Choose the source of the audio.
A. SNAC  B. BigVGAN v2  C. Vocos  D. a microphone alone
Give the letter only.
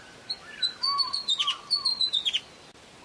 D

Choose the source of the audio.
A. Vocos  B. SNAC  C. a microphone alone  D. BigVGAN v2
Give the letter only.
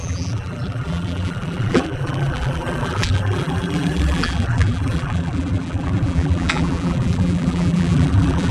D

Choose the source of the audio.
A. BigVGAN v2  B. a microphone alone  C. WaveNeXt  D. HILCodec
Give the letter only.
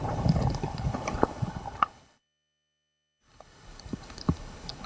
D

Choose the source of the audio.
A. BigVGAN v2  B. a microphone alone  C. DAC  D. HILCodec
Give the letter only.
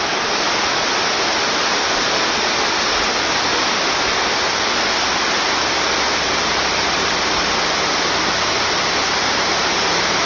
B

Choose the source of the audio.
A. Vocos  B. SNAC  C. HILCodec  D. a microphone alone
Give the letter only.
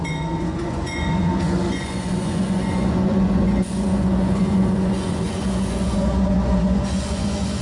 A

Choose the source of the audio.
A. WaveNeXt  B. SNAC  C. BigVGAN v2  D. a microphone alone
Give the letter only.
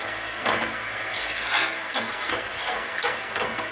B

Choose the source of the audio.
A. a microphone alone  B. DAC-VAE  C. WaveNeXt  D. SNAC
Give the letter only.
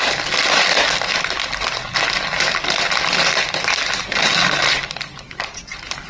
A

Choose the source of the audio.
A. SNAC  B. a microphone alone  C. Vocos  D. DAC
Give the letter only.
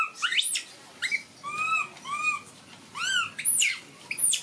B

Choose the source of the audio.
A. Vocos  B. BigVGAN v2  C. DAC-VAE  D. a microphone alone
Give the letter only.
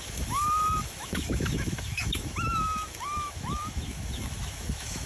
C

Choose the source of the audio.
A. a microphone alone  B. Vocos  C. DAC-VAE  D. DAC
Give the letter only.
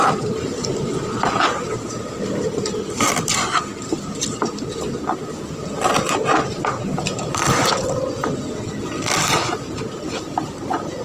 A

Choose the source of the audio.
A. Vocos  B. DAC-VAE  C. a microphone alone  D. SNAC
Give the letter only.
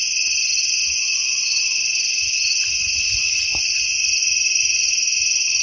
C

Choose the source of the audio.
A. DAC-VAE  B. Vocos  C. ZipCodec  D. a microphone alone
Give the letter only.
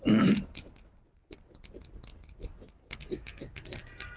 D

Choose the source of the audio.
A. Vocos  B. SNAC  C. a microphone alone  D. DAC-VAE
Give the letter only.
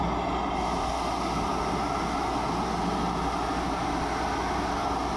C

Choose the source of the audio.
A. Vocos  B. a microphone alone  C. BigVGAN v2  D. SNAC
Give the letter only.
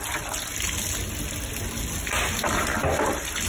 B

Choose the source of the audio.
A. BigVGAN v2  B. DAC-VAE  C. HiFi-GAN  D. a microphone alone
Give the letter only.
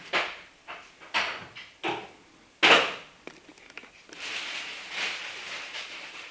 D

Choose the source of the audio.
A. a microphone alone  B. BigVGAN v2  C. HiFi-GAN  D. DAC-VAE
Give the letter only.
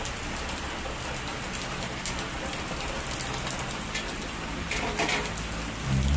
A